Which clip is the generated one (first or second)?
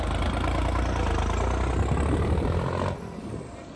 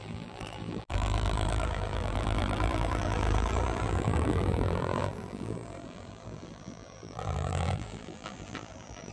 second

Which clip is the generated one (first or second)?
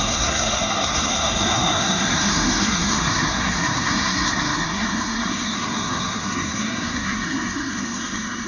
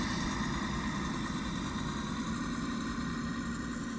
first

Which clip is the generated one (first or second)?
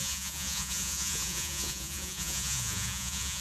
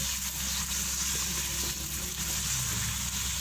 first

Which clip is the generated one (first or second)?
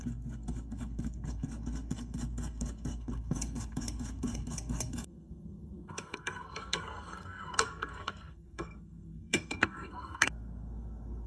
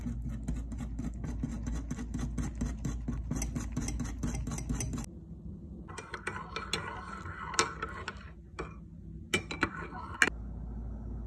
first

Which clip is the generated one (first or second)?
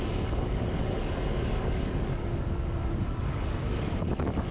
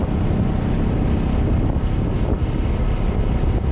first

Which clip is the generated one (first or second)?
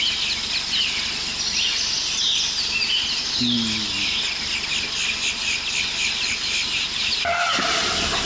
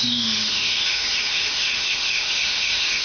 second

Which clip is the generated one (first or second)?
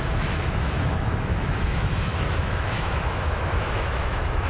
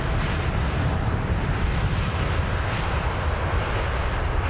first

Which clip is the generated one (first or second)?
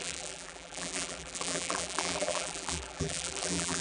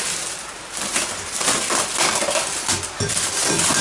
first